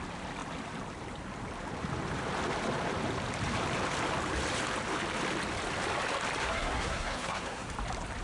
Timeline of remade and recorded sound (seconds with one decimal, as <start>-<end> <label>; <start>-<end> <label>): 0.0-6.4 recorded; 6.4-7.7 remade; 7.7-8.2 recorded